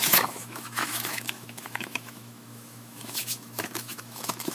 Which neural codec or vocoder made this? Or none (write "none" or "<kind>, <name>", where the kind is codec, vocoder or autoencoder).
autoencoder, DAC-VAE